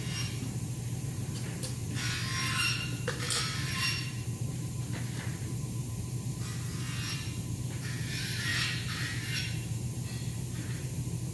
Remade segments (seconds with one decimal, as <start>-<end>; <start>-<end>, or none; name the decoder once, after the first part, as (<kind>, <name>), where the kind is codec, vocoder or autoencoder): 0.0-1.8 (vocoder, BigVGAN v2); 2.6-11.3